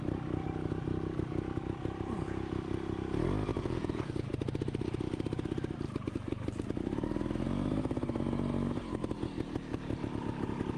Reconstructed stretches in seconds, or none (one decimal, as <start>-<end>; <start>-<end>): 3.5-4.1